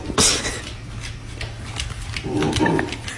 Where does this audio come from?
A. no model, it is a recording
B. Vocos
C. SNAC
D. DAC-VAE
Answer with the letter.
A